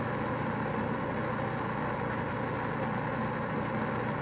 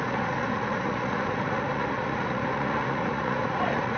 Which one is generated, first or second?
second